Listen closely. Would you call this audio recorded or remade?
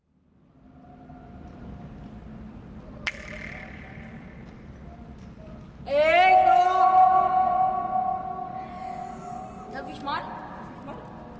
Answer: recorded